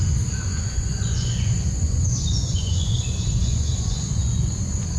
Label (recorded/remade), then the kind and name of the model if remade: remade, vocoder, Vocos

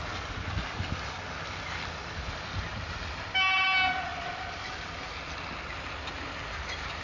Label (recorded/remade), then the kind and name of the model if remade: recorded